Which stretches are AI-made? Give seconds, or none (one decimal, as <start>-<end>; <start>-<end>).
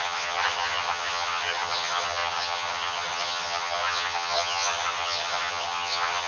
0.0-6.3